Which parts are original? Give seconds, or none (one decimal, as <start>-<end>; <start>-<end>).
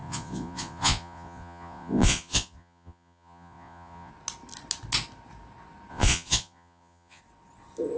4.1-5.9; 7.2-8.0